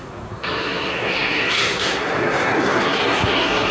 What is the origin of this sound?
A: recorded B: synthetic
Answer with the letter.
B